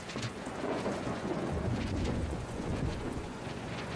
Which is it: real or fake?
fake